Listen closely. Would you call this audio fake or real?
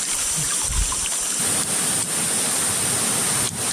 real